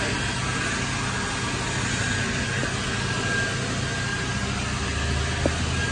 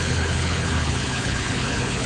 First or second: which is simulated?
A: second